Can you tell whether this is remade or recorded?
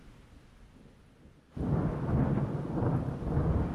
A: recorded